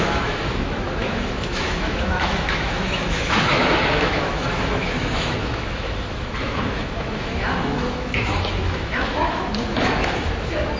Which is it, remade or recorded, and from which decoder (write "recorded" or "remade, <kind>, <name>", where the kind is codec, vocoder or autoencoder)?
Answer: remade, autoencoder, DAC-VAE